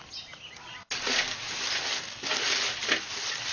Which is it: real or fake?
real